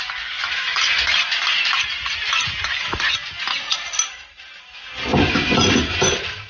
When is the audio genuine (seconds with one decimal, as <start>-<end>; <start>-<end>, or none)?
0.0-0.4; 1.4-5.1